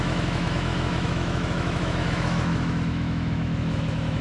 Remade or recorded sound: remade